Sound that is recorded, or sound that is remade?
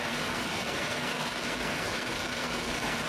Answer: remade